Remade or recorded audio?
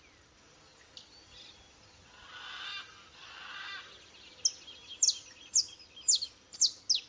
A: recorded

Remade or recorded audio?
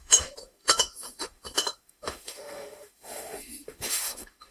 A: remade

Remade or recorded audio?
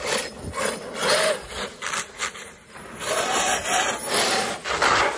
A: recorded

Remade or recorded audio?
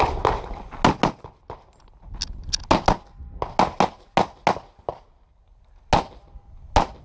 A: recorded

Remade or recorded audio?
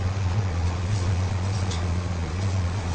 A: remade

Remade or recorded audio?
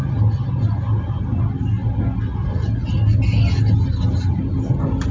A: recorded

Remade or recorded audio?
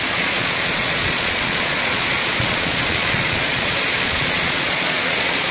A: remade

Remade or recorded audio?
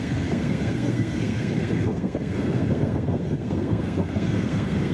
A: remade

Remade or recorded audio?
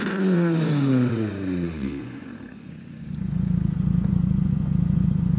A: remade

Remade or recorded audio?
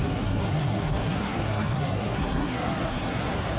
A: remade